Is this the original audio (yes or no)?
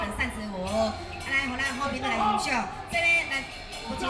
yes